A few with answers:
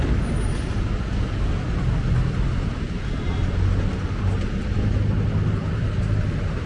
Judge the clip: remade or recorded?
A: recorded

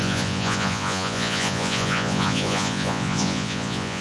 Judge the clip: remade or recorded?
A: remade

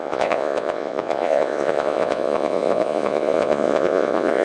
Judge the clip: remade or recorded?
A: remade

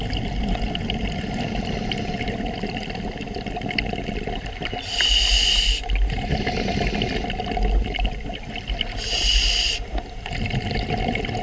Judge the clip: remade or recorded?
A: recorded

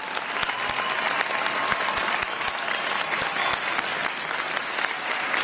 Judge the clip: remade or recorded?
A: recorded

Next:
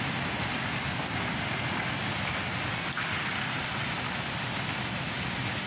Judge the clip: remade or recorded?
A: recorded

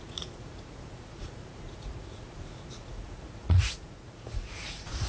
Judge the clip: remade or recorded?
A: remade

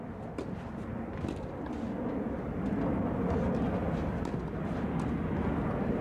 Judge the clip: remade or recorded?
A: recorded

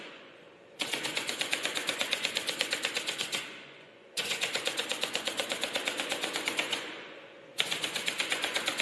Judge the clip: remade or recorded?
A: remade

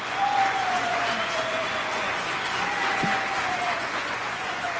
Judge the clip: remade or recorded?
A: remade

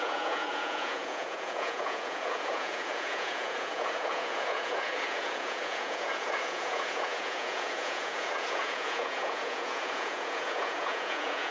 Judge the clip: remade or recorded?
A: remade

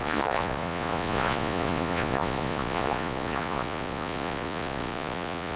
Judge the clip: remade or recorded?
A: remade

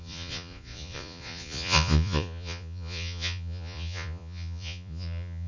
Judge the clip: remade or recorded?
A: remade